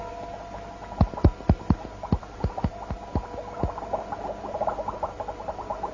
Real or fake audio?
real